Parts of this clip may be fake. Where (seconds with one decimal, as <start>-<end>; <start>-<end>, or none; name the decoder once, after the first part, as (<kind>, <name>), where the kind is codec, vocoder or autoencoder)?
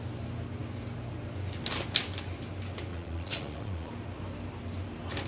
2.9-3.9 (vocoder, Vocos)